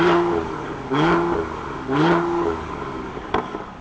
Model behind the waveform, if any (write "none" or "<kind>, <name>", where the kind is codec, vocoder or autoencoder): codec, DAC